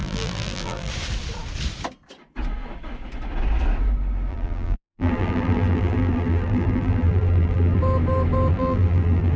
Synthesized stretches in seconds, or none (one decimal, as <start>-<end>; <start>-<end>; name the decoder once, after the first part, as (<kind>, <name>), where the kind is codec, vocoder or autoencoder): 0.0-0.9 (vocoder, BigVGAN v2); 4.3-7.8; 8.5-9.4